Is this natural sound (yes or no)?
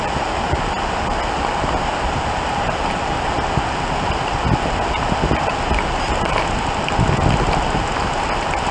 yes